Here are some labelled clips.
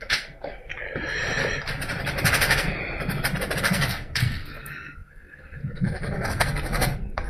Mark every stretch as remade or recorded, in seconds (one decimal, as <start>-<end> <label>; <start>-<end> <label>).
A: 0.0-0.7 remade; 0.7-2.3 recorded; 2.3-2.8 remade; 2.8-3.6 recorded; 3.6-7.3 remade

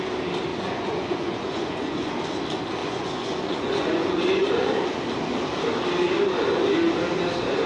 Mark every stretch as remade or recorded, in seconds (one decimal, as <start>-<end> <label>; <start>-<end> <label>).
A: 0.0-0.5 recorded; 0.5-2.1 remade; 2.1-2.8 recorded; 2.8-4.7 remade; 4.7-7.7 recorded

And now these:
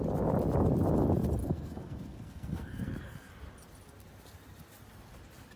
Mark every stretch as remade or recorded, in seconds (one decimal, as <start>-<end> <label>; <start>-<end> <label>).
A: 0.0-1.4 recorded; 1.4-3.3 remade; 3.3-5.6 recorded

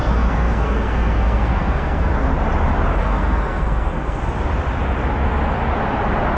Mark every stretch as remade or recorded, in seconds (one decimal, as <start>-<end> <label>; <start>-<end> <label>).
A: 0.0-2.1 remade; 2.1-3.0 recorded; 3.0-4.2 remade; 4.2-6.4 recorded